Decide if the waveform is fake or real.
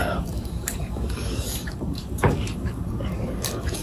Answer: fake